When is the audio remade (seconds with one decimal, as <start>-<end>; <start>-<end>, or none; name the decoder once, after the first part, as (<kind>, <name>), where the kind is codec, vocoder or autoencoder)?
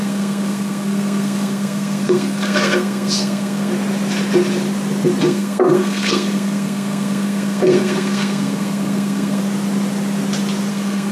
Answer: 0.0-3.7 (codec, SNAC); 5.2-9.4; 10.7-11.1